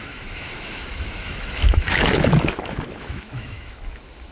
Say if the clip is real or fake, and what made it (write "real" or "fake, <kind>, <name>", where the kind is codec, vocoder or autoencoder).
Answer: fake, autoencoder, DAC-VAE